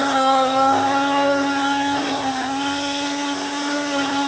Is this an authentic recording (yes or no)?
no